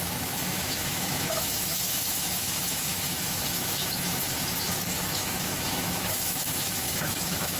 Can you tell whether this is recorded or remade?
remade